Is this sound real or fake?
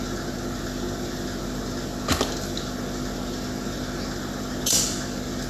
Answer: real